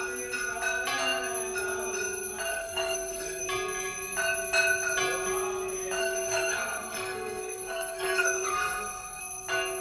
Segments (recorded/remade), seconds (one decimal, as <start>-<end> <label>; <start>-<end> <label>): 0.0-2.5 recorded; 2.5-3.4 remade; 3.4-6.0 recorded; 6.0-9.2 remade; 9.2-9.8 recorded

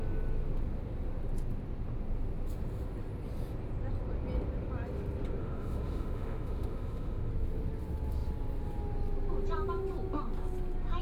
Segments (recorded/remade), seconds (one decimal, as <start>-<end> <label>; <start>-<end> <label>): 0.0-5.4 recorded; 5.4-7.3 remade; 7.3-11.0 recorded

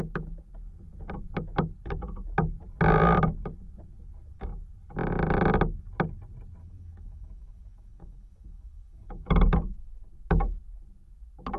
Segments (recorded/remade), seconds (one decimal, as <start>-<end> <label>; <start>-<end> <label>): 0.0-6.6 recorded; 6.6-10.1 remade; 10.1-11.6 recorded